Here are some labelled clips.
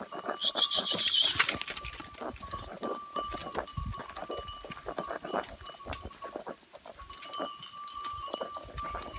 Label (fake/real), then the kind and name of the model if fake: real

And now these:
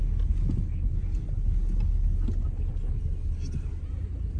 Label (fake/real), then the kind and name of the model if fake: real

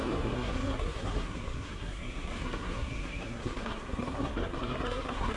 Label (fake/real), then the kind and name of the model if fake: fake, codec, SNAC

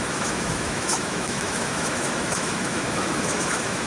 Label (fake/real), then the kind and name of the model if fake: fake, autoencoder, DAC-VAE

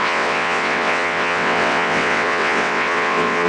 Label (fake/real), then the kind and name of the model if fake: fake, vocoder, WaveNeXt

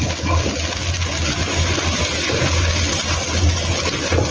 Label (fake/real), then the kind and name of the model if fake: real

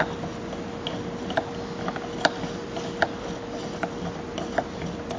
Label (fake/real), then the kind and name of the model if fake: real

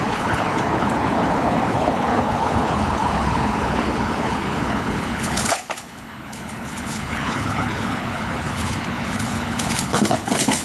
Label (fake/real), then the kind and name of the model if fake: fake, codec, HILCodec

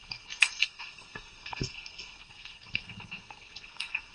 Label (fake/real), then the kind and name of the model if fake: fake, codec, SNAC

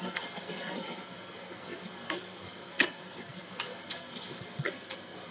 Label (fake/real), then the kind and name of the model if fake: fake, codec, SNAC